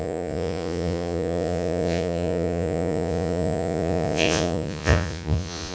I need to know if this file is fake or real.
fake